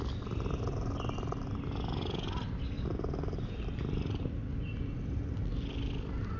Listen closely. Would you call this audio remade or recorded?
recorded